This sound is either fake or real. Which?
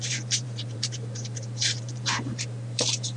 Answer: fake